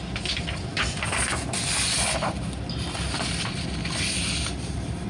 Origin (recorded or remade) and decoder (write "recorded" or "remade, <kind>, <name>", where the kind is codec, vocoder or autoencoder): recorded